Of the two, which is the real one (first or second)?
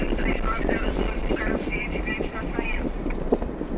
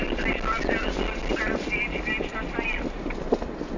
second